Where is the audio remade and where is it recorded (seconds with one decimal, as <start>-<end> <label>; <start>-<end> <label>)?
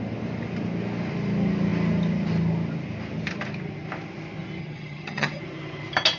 0.0-4.6 recorded; 4.6-5.4 remade; 5.4-6.2 recorded